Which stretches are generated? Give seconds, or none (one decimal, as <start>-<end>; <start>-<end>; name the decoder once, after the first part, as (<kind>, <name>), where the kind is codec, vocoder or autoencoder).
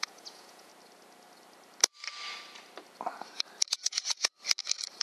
0.0-0.7 (vocoder, Vocos); 3.7-4.3